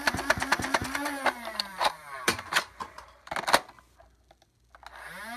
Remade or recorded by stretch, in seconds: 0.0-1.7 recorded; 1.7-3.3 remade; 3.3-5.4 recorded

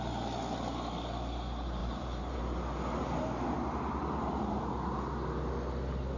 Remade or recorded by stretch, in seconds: 0.0-1.8 recorded; 1.8-2.4 remade; 2.4-6.2 recorded

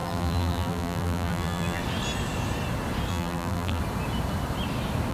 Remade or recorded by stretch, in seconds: 0.0-1.8 remade; 1.8-3.1 recorded; 3.1-3.8 remade; 3.8-5.1 recorded

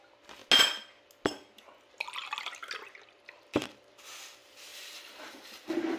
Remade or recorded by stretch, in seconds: 0.0-4.7 recorded; 4.7-6.0 remade

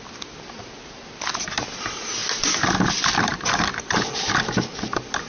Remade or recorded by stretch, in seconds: 0.0-3.3 recorded; 3.3-3.9 remade; 3.9-5.3 recorded

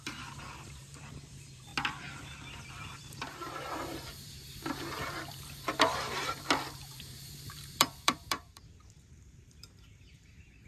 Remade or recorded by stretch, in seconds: 0.0-1.7 remade; 1.7-2.7 recorded; 2.7-10.7 remade

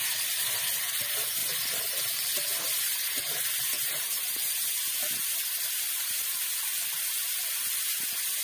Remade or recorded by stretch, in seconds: 0.0-8.4 recorded